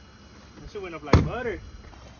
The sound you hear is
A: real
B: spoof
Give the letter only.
A